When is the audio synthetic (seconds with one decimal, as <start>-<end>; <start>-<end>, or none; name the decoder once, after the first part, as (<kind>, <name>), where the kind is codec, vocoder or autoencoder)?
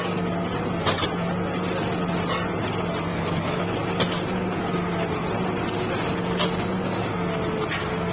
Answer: 3.1-3.7 (autoencoder, DAC-VAE)